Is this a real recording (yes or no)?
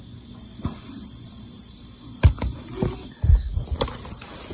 yes